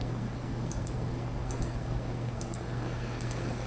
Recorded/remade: remade